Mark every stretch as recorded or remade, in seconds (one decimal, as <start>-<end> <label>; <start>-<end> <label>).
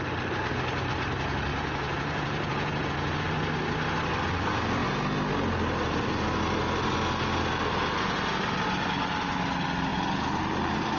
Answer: 0.0-1.5 recorded; 1.5-3.2 remade; 3.2-11.0 recorded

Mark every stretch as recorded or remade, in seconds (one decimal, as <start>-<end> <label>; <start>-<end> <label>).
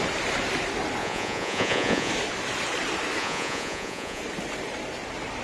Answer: 0.0-1.0 recorded; 1.0-2.1 remade; 2.1-3.2 recorded; 3.2-4.2 remade; 4.2-5.4 recorded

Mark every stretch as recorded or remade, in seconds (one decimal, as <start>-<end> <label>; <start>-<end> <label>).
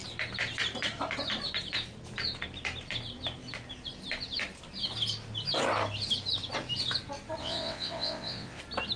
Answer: 0.0-7.4 recorded; 7.4-8.6 remade; 8.6-9.0 recorded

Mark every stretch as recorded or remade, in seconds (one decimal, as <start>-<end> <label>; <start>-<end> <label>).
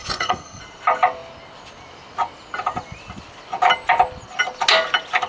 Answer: 0.0-0.6 remade; 0.6-5.3 recorded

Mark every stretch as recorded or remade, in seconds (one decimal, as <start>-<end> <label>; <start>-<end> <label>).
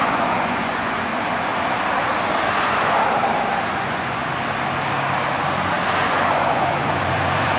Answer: 0.0-1.5 remade; 1.5-2.6 recorded; 2.6-3.0 remade; 3.0-3.7 recorded; 3.7-4.2 remade; 4.2-6.0 recorded; 6.0-7.6 remade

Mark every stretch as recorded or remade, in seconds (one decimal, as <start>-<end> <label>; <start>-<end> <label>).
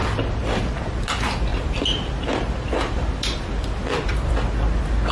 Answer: 0.0-1.5 recorded; 1.5-4.3 remade; 4.3-5.1 recorded